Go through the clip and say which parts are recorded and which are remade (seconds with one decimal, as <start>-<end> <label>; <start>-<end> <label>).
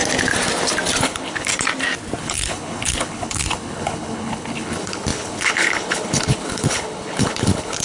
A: 0.0-1.0 recorded; 1.0-1.5 remade; 1.5-2.2 recorded; 2.2-7.8 remade